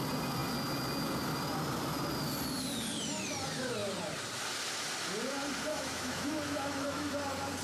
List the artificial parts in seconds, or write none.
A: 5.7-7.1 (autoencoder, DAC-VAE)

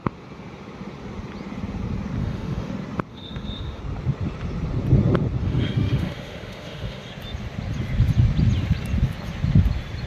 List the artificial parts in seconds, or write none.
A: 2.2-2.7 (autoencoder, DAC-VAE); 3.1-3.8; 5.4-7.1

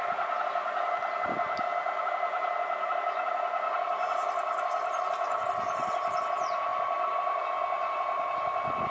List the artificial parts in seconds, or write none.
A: none

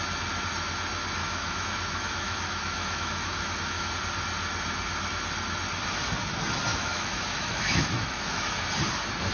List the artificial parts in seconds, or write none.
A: 1.2-3.9 (autoencoder, DAC-VAE); 6.7-8.6